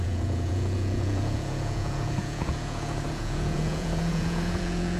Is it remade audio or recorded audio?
remade